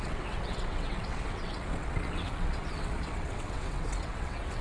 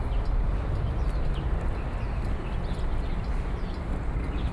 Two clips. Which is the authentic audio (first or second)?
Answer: second